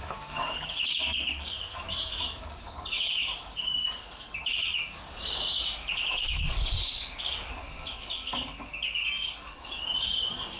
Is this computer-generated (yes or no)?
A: yes